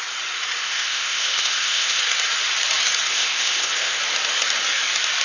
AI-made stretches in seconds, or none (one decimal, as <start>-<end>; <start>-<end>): 0.6-2.0; 3.1-4.0